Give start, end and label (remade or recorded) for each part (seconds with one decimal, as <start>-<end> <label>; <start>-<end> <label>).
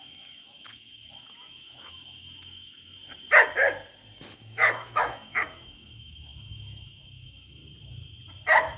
0.0-3.0 remade; 3.0-4.3 recorded; 4.3-7.6 remade; 7.6-8.8 recorded